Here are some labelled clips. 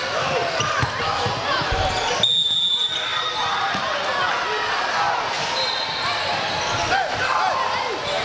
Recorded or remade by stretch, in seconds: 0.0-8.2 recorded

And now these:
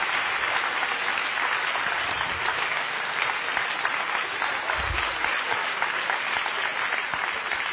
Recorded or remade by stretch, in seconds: 0.0-2.5 recorded; 2.5-3.1 remade; 3.1-5.6 recorded; 5.6-6.3 remade; 6.3-7.7 recorded

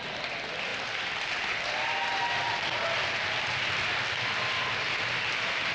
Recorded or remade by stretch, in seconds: 0.0-5.7 recorded